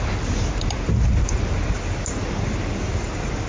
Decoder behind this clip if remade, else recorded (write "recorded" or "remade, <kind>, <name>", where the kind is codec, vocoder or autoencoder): recorded